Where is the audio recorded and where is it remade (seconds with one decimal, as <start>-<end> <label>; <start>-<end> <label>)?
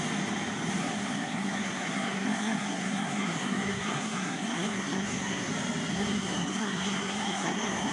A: 0.0-0.8 recorded; 0.8-5.5 remade; 5.5-5.9 recorded; 5.9-7.9 remade